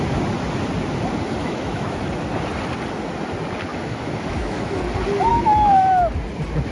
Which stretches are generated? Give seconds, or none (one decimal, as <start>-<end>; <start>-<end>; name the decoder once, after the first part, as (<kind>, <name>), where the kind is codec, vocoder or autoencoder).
1.4-2.0 (autoencoder, DAC-VAE); 3.7-4.8; 5.3-6.0